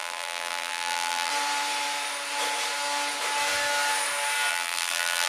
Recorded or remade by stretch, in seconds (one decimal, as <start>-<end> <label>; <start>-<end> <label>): 0.0-1.3 remade; 1.3-4.5 recorded; 4.5-5.3 remade